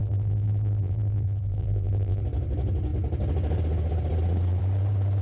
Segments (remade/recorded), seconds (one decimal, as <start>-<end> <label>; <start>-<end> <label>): 0.0-2.2 remade; 2.2-5.2 recorded